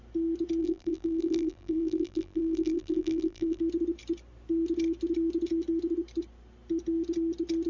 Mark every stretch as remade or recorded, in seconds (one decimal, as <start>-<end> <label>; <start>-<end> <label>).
0.0-0.6 recorded; 0.6-3.6 remade; 3.6-7.7 recorded